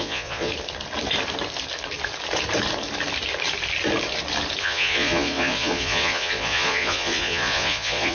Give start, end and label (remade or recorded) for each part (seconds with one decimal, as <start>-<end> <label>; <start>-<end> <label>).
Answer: 0.0-0.5 remade; 0.5-4.6 recorded; 4.6-8.1 remade